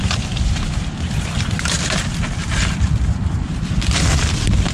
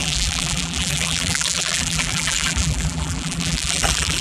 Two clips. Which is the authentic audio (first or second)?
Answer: first